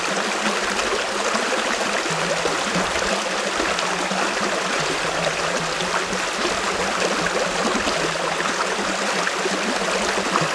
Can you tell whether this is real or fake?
real